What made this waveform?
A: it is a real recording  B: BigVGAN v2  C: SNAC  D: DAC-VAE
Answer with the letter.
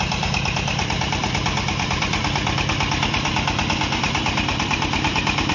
B